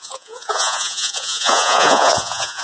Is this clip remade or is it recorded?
remade